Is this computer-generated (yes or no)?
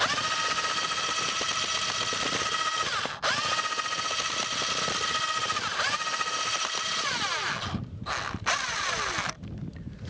no